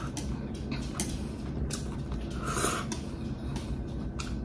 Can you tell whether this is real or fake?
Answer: real